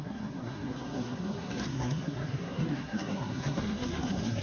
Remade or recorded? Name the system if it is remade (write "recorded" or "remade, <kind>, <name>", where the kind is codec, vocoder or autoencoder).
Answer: remade, codec, SNAC